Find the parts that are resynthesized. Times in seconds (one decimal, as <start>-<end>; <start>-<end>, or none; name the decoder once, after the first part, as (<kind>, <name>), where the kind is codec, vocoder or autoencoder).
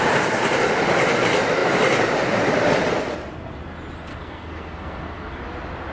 4.1-5.4 (codec, SNAC)